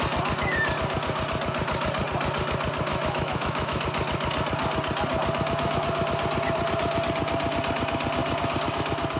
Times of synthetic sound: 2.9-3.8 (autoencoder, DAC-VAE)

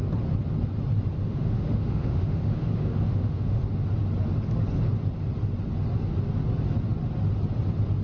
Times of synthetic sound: 1.2-3.6 (autoencoder, DAC-VAE)

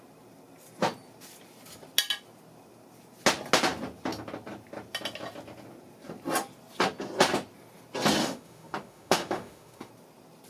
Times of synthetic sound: 8.2-9.9 (autoencoder, DAC-VAE)

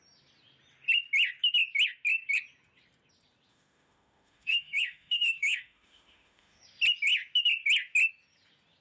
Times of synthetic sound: 3.5-6.6 (autoencoder, DAC-VAE)

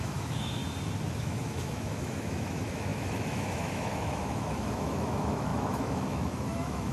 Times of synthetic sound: 0.0-0.6 (autoencoder, DAC-VAE); 1.2-6.9